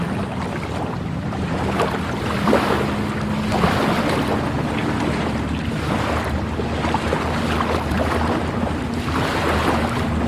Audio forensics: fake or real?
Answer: real